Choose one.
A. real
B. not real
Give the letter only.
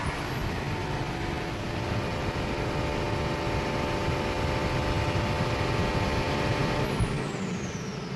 A